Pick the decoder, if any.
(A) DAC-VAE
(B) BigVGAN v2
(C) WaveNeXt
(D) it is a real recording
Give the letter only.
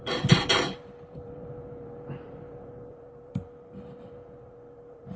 B